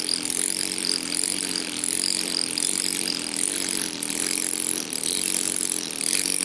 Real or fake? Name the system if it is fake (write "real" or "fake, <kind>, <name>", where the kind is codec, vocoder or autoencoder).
fake, vocoder, BigVGAN v2